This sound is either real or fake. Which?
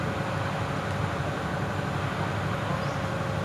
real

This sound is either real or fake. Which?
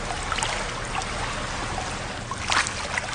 real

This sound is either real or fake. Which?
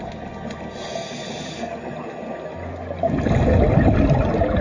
real